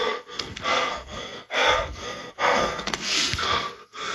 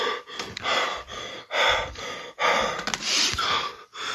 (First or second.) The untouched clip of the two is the second